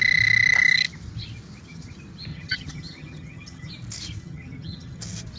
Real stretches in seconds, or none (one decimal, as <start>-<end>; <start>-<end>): 0.0-2.3; 3.7-4.2; 5.0-5.4